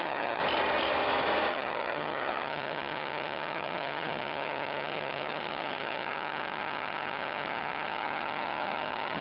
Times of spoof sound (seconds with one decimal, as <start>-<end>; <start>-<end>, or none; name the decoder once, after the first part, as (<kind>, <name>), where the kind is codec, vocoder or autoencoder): 0.0-0.4 (vocoder, HiFi-GAN); 1.5-9.2